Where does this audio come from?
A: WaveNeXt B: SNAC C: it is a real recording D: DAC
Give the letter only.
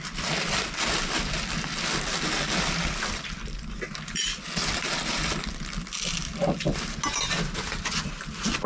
C